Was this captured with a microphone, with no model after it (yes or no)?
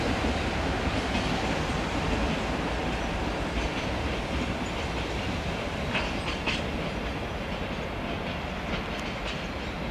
yes